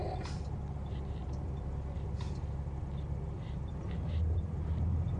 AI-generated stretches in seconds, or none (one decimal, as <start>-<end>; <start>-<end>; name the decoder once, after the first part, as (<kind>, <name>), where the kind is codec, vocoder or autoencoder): 0.0-5.2 (vocoder, BigVGAN v2)